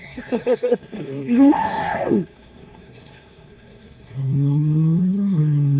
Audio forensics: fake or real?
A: fake